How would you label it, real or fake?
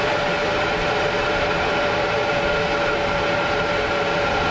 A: fake